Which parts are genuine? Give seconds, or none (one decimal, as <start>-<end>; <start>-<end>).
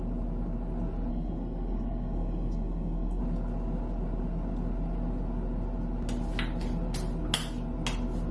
0.0-1.1; 3.2-8.3